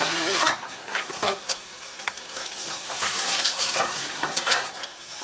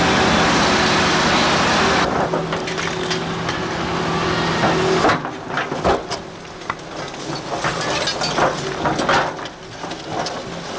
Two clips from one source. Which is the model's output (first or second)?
first